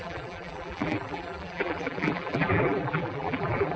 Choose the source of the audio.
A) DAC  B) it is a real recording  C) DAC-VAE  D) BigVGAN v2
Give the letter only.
D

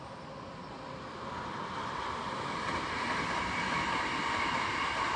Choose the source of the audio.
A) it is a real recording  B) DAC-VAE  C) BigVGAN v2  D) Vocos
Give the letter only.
A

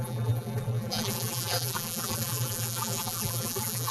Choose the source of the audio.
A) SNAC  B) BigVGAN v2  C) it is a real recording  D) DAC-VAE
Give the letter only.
B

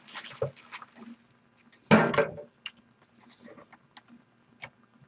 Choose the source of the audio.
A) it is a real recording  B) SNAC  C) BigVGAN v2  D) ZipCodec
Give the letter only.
A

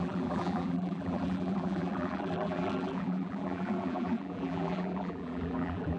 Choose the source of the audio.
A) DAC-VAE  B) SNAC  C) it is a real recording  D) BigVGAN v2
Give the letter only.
D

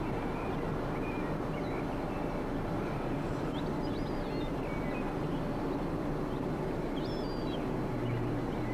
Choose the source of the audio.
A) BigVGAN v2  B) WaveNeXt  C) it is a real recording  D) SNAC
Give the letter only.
C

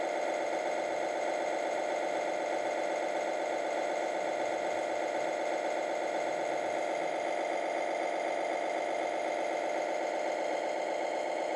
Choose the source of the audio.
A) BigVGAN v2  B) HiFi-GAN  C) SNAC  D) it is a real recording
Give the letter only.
A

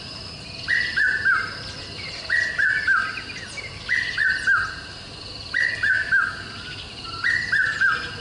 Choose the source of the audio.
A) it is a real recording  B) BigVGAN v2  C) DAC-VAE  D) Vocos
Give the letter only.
A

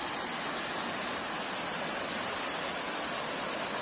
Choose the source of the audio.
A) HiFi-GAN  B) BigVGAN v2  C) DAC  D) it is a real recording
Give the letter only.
D